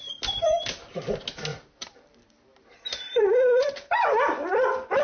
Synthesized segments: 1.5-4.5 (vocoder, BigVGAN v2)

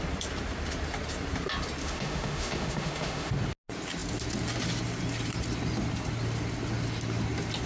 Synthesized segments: 1.8-3.3 (autoencoder, DAC-VAE)

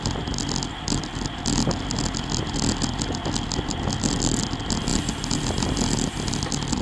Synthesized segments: none

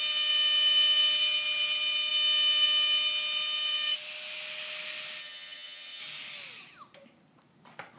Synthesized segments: 5.2-6.0 (vocoder, HiFi-GAN)

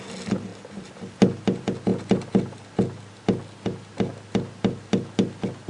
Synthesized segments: none

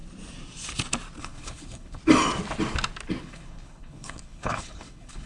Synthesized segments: 1.2-2.0 (codec, HILCodec); 3.2-5.3

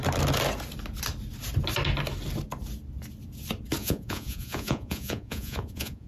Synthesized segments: 3.8-6.1 (vocoder, Vocos)